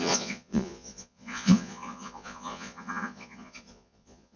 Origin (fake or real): fake